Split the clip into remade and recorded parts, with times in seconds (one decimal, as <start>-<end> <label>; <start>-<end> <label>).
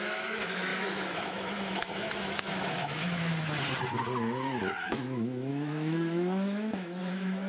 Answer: 0.0-3.3 remade; 3.3-4.8 recorded; 4.8-7.5 remade